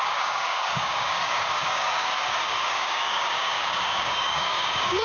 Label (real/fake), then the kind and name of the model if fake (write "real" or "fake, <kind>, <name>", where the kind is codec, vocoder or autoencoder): fake, codec, DAC